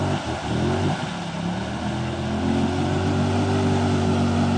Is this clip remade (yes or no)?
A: no